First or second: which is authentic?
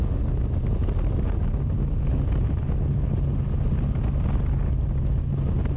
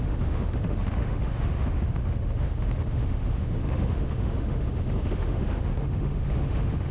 first